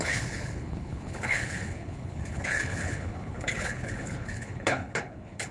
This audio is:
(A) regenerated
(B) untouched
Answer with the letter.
A